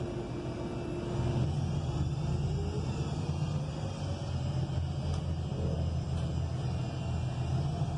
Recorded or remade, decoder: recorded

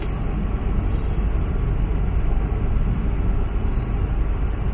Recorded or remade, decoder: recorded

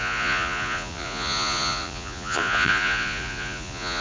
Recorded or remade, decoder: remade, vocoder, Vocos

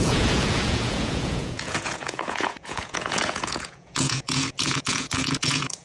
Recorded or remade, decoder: remade, vocoder, Vocos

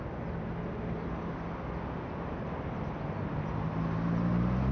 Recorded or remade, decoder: recorded